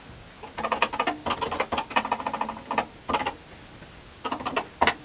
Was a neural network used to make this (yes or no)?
no